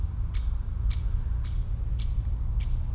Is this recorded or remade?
recorded